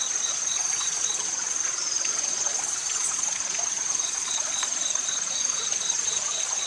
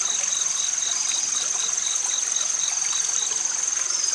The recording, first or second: second